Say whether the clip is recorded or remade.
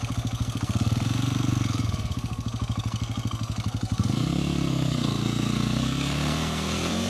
remade